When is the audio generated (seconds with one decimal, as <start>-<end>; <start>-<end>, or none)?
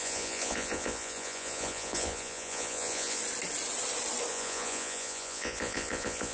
0.0-3.2; 4.3-6.3